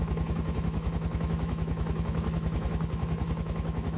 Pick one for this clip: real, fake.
fake